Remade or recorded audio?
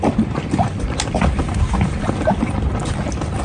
recorded